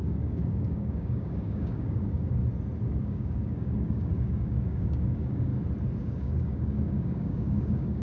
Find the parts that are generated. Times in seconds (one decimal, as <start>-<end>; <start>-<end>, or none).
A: 0.0-2.4; 3.0-5.5; 6.0-8.0